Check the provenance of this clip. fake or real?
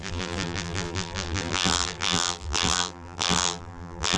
fake